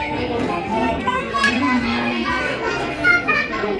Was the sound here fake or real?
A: fake